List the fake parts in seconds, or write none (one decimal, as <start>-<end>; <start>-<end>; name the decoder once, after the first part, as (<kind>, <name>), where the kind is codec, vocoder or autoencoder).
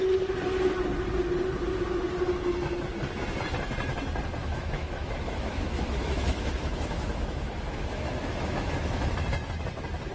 4.4-9.2 (autoencoder, DAC-VAE)